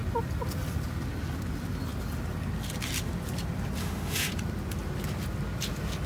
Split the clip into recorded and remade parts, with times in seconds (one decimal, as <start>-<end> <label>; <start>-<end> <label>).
0.0-3.8 recorded; 3.8-4.3 remade; 4.3-6.1 recorded